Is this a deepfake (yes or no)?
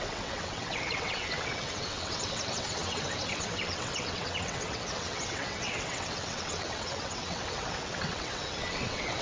yes